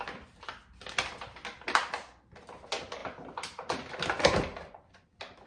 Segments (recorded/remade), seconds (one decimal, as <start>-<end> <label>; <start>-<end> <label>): 0.0-5.5 recorded